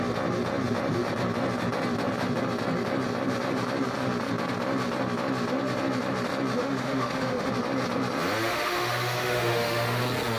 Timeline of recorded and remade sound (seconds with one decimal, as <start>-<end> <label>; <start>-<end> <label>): 0.0-6.6 recorded; 6.6-7.5 remade; 7.5-8.5 recorded; 8.5-10.0 remade; 10.0-10.4 recorded